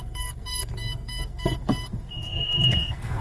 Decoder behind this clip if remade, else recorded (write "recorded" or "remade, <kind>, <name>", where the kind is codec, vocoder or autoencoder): remade, codec, SNAC